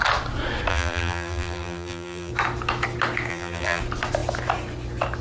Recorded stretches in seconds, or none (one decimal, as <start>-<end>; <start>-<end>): 0.0-0.7; 2.3-3.3; 3.8-5.2